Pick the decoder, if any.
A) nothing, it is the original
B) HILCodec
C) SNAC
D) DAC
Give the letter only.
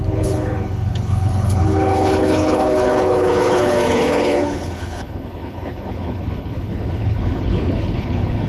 B